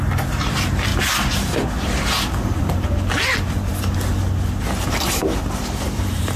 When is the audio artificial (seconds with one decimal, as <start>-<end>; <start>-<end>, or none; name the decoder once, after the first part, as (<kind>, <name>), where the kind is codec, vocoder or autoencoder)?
0.0-0.9 (vocoder, BigVGAN v2); 4.6-6.4